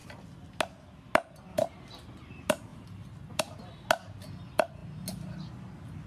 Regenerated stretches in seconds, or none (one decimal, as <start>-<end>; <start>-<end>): 2.7-3.4